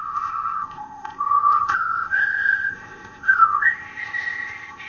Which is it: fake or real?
fake